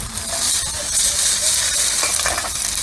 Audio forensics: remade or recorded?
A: remade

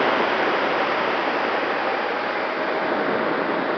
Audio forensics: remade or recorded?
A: recorded